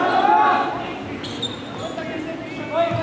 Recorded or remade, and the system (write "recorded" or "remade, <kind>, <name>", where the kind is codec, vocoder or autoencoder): recorded